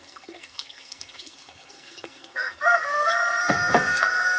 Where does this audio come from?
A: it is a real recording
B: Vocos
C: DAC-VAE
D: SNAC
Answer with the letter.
D